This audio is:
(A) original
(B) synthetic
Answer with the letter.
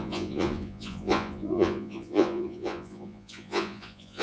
B